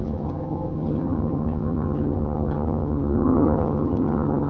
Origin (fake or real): fake